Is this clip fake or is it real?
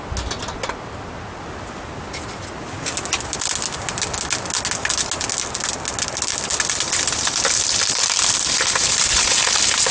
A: real